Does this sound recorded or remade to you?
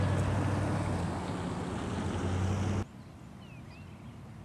recorded